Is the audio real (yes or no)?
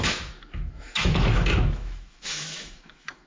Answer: no